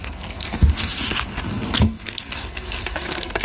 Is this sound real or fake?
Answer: fake